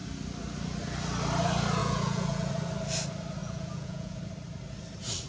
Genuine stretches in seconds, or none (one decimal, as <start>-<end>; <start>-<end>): 0.0-1.8; 2.5-3.4; 4.2-5.3